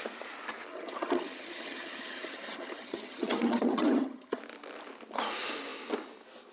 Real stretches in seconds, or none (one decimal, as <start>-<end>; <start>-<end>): 0.0-0.7; 4.4-6.5